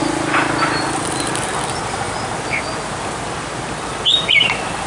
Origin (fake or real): real